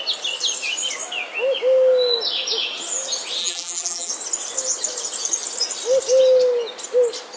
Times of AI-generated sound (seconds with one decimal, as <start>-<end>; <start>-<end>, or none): 3.4-4.1